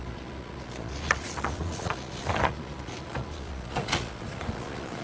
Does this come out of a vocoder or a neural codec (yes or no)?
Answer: yes